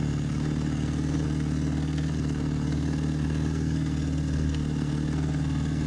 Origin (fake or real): fake